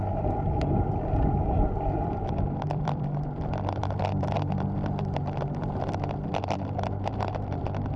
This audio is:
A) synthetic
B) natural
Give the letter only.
A